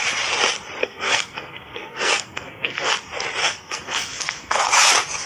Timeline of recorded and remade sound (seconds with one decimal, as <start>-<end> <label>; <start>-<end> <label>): 0.0-0.8 recorded; 0.8-2.9 remade; 2.9-3.4 recorded; 3.4-4.7 remade; 4.7-5.3 recorded